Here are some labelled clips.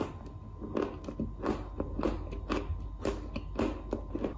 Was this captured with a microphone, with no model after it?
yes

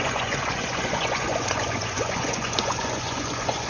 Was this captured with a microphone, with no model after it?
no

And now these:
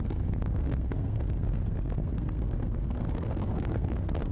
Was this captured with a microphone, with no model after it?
no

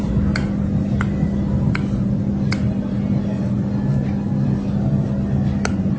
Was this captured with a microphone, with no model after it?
yes